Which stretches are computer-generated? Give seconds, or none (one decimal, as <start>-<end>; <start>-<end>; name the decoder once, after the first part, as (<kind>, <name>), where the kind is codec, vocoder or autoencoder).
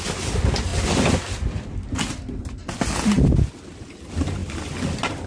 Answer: none